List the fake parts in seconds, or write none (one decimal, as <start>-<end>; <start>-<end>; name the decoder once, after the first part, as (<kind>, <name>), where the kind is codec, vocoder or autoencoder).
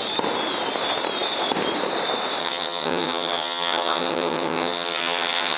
2.4-5.6 (vocoder, HiFi-GAN)